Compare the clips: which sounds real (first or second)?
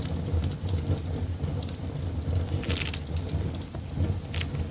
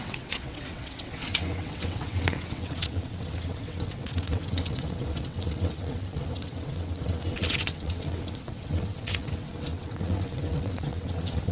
first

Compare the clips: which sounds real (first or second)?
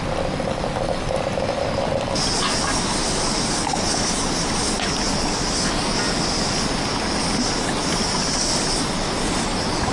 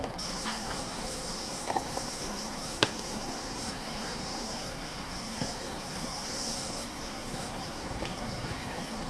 first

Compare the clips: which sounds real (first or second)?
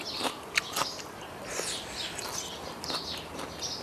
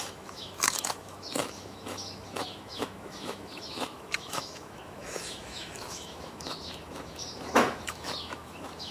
first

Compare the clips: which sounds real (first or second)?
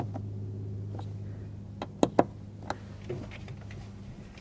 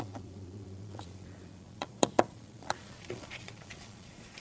first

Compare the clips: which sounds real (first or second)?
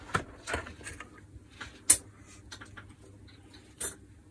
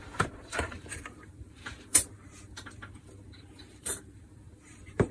first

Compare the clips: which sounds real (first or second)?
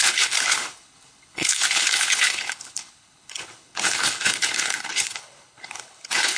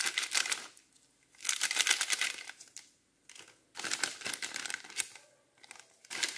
second